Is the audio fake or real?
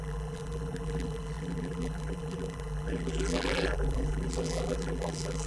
fake